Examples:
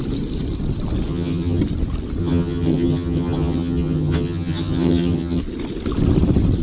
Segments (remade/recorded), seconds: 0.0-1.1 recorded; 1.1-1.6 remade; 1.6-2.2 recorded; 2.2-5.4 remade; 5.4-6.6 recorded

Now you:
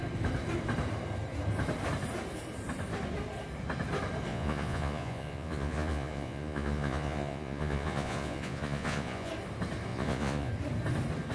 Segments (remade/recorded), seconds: 0.0-4.3 recorded; 4.3-9.3 remade; 9.3-9.9 recorded; 9.9-10.5 remade; 10.5-11.3 recorded

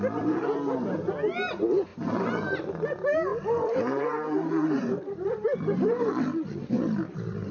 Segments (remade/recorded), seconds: 0.0-3.3 recorded; 3.3-4.5 remade; 4.5-5.5 recorded; 5.5-6.1 remade; 6.1-7.5 recorded

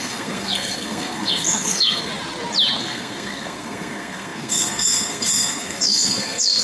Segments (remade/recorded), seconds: 0.0-2.1 remade; 2.1-2.8 recorded; 2.8-6.6 remade

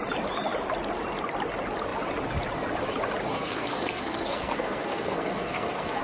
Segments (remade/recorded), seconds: 0.0-3.3 recorded; 3.3-6.0 remade